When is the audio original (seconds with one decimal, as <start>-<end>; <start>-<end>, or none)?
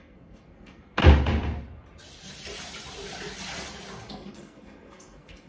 1.0-4.1